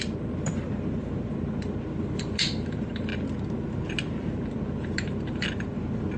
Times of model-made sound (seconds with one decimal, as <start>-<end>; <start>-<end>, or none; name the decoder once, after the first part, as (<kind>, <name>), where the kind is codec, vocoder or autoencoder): 0.0-3.1 (vocoder, BigVGAN v2); 3.9-6.2